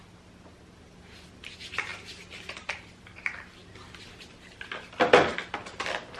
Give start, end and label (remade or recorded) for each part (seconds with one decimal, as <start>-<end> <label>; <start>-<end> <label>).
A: 0.0-6.2 recorded